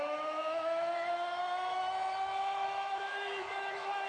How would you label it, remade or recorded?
remade